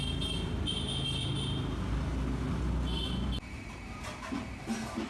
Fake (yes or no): no